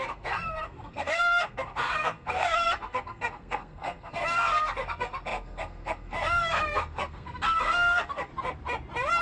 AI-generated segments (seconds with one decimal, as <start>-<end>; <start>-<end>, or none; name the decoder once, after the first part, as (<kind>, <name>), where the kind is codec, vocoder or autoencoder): 0.0-8.3 (codec, SNAC)